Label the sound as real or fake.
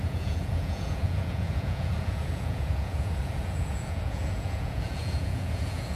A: fake